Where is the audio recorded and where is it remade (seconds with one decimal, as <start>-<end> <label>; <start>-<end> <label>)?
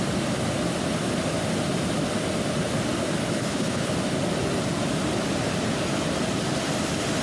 0.0-3.4 recorded; 3.4-3.9 remade; 3.9-7.2 recorded